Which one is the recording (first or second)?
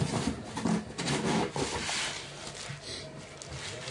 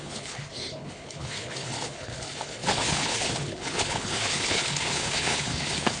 first